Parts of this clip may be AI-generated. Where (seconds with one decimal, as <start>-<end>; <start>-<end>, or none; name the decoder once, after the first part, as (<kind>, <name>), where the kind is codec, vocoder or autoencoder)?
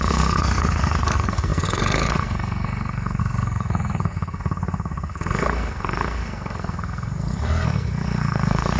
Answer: 0.0-8.8 (codec, SNAC)